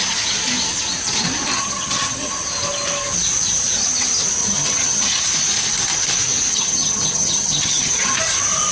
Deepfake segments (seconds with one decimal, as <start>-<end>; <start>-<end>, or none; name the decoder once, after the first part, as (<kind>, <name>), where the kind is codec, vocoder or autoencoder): 1.5-2.3 (vocoder, HiFi-GAN); 4.4-5.2; 6.5-8.1